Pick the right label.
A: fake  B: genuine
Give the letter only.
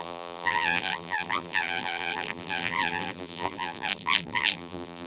A